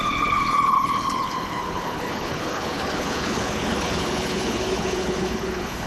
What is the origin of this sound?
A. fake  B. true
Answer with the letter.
A